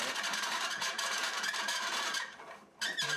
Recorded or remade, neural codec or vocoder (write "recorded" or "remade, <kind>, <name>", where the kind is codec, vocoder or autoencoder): remade, vocoder, BigVGAN v2